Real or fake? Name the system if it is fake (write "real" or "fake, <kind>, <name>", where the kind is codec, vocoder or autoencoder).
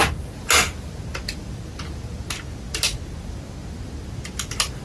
real